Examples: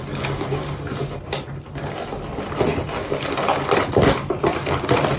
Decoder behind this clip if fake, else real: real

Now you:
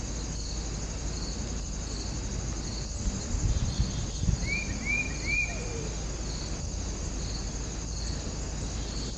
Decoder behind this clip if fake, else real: real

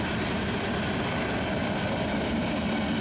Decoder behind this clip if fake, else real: real